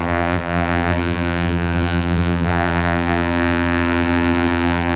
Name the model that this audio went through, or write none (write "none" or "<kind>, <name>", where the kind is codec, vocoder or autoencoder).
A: vocoder, BigVGAN v2